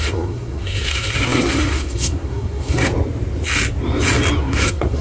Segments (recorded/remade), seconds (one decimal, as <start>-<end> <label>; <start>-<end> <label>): 0.0-2.9 remade; 2.9-4.4 recorded; 4.4-5.0 remade